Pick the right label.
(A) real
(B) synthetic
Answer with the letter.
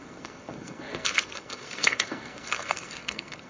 B